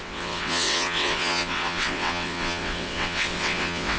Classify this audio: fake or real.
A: fake